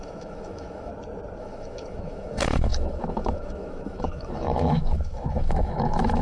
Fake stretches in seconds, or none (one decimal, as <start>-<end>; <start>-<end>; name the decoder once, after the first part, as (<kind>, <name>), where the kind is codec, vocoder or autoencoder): 0.0-0.9 (autoencoder, DAC-VAE); 1.4-6.2